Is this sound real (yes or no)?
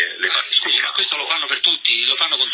yes